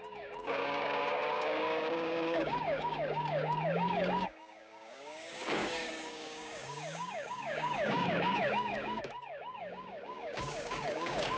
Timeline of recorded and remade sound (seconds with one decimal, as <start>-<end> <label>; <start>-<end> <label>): 0.0-11.4 remade